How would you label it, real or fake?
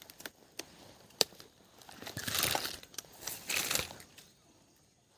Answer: real